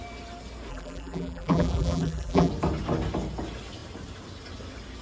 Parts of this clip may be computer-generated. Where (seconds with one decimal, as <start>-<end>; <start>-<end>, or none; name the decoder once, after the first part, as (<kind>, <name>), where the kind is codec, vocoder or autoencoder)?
0.7-2.5 (vocoder, BigVGAN v2)